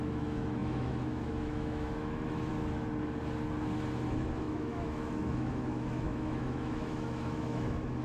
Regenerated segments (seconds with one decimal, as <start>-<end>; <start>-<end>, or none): 0.0-2.5; 4.1-8.0